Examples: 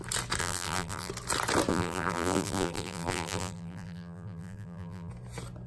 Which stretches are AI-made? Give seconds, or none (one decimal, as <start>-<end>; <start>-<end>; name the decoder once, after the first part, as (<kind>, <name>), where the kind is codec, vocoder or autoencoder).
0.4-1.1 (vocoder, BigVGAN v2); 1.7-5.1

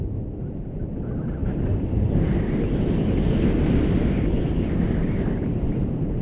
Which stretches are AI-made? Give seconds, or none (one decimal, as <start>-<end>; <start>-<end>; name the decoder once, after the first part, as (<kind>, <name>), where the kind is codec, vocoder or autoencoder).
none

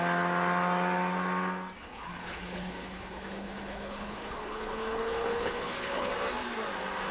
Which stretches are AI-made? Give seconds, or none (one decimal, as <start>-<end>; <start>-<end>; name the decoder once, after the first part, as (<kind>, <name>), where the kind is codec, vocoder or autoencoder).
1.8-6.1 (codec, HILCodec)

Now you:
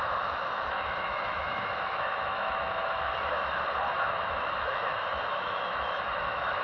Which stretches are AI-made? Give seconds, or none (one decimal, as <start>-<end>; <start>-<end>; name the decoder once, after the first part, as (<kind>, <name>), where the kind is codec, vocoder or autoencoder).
0.0-3.1 (autoencoder, DAC-VAE); 4.0-6.6

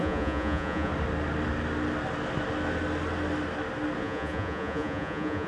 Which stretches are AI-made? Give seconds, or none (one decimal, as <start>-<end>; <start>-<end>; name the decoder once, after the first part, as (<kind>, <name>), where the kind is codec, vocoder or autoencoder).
0.0-0.9 (vocoder, Vocos); 4.0-5.5